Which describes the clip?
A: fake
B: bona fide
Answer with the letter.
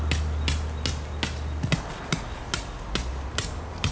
B